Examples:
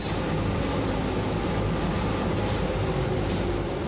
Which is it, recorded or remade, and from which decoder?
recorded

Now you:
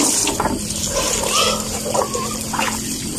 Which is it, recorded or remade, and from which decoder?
recorded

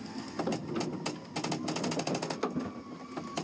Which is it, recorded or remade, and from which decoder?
recorded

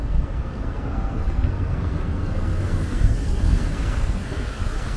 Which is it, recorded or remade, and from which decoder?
remade, codec, SNAC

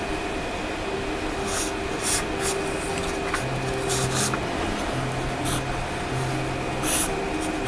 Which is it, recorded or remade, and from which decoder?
recorded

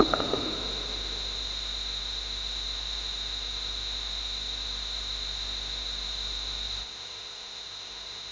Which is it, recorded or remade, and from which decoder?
remade, autoencoder, DAC-VAE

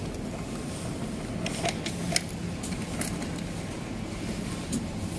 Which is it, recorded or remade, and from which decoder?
recorded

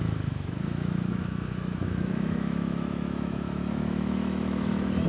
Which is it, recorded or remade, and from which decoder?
remade, autoencoder, DAC-VAE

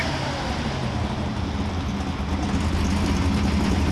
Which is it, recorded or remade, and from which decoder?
recorded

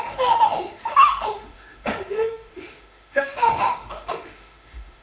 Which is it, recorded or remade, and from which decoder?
remade, autoencoder, DAC-VAE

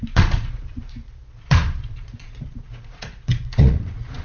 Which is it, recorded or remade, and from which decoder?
remade, vocoder, Vocos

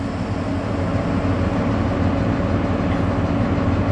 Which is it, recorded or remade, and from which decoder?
recorded